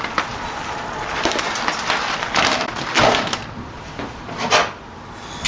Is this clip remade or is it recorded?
recorded